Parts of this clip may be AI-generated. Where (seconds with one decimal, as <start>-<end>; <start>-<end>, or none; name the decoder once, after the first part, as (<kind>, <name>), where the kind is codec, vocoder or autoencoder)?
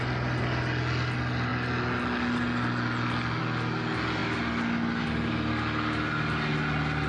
none